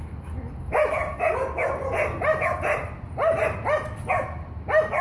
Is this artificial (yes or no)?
no